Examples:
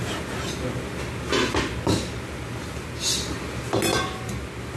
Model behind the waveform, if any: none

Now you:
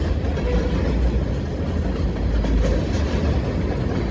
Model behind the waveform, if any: none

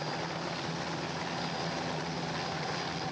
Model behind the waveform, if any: none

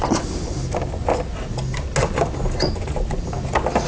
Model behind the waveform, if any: none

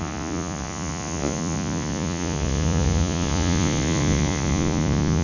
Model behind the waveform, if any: vocoder, Vocos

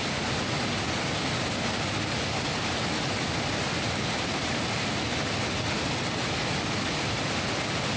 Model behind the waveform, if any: none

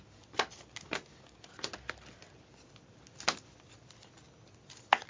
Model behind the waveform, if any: none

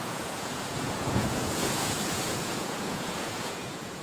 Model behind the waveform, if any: vocoder, Vocos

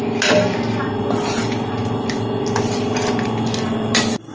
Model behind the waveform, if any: none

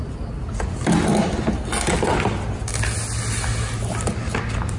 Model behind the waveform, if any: none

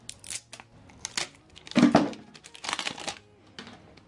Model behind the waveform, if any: none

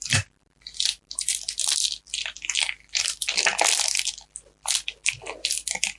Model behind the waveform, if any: none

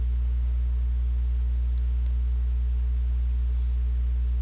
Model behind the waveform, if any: none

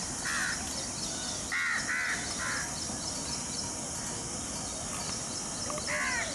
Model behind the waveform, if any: none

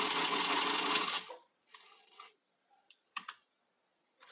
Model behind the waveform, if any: vocoder, Vocos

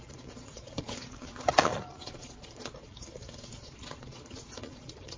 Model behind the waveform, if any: vocoder, Vocos